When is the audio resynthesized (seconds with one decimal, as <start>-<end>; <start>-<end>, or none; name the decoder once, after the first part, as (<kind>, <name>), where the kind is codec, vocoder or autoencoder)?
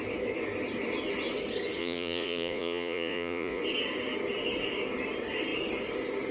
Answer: 1.8-3.6 (vocoder, Vocos)